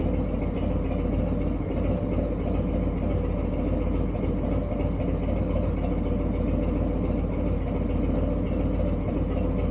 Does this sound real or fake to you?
real